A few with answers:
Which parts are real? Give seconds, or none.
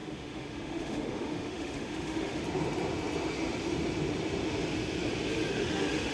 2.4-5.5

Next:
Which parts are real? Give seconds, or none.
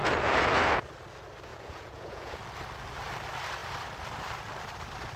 0.0-1.5; 2.4-5.2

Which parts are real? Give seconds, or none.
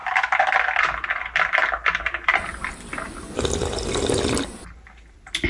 0.0-5.5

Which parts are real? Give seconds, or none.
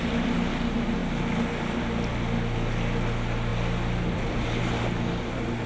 0.0-5.7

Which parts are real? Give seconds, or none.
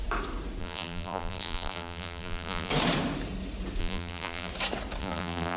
0.0-0.6; 2.7-3.8; 4.5-5.0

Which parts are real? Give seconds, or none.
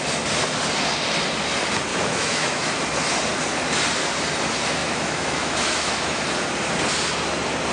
0.0-1.9; 2.7-4.8; 6.2-7.7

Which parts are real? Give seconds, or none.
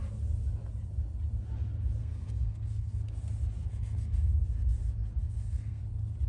0.0-2.0; 3.0-3.7; 4.3-5.2; 5.8-6.3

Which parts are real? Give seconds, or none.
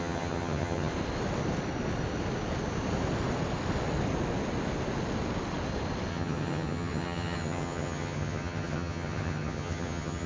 0.9-6.1